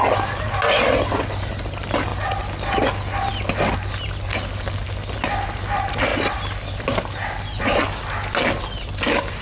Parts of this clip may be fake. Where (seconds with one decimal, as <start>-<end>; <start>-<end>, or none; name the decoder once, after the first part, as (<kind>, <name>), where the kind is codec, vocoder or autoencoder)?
none